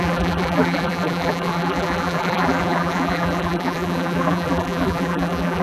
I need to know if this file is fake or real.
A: fake